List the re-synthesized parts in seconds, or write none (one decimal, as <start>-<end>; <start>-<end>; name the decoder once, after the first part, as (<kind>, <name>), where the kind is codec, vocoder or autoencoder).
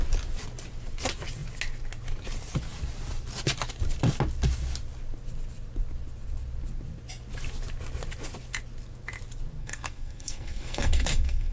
9.6-11.5 (codec, SNAC)